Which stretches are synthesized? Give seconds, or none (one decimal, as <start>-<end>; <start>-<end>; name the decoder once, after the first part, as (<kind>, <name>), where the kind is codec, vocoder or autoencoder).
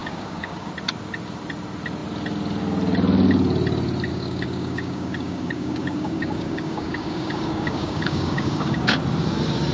0.0-0.7 (codec, DAC); 4.1-9.0